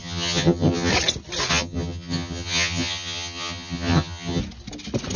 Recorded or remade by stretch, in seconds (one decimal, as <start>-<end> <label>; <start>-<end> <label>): 0.0-0.9 remade; 0.9-1.5 recorded; 1.5-4.4 remade; 4.4-5.2 recorded